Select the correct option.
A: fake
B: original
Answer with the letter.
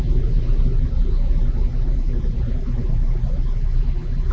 B